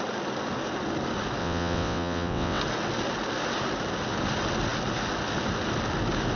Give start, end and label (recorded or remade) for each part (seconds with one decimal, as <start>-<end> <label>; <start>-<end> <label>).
0.0-1.4 recorded; 1.4-2.6 remade; 2.6-6.4 recorded

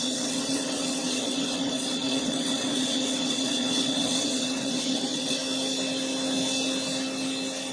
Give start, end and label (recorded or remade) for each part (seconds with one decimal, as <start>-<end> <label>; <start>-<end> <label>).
0.0-5.4 remade; 5.4-7.7 recorded

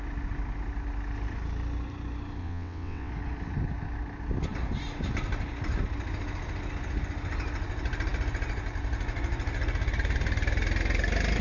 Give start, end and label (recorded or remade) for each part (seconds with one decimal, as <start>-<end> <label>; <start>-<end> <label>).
0.0-2.4 recorded; 2.4-3.1 remade; 3.1-11.4 recorded

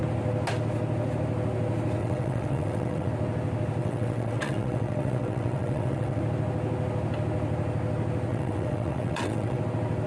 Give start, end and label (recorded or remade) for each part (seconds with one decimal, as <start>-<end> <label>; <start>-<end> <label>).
0.0-2.0 recorded; 2.0-3.1 remade; 3.1-3.8 recorded; 3.8-6.2 remade; 6.2-8.3 recorded; 8.3-9.6 remade; 9.6-10.1 recorded

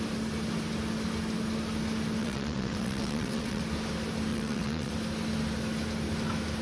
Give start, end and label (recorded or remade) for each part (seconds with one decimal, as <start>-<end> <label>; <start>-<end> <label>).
0.0-2.2 recorded; 2.2-3.6 remade; 3.6-4.3 recorded; 4.3-4.9 remade; 4.9-6.6 recorded

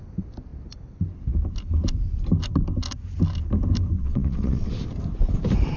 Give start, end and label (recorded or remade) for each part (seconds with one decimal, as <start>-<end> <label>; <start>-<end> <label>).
0.0-4.0 recorded; 4.0-4.7 remade; 4.7-5.8 recorded